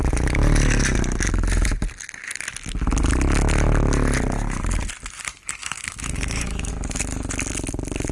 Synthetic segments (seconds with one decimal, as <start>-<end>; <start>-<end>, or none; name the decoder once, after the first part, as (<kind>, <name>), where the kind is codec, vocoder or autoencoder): 5.6-6.7 (autoencoder, DAC-VAE)